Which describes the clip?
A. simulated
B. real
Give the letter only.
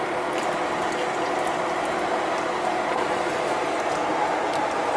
B